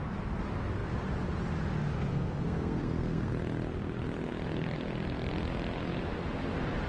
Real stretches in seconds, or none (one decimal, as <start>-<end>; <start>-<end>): 0.0-2.1; 3.3-6.9